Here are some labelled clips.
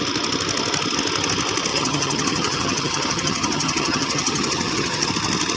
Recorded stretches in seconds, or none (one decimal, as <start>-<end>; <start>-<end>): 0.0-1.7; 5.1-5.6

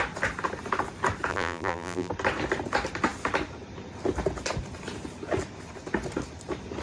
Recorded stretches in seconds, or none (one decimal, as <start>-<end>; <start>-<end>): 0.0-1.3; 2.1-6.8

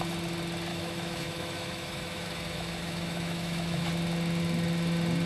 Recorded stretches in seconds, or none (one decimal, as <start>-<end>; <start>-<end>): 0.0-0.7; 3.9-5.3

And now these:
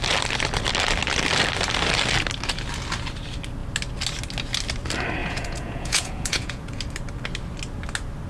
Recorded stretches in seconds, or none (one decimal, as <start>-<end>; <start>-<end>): 0.0-5.2; 6.8-8.3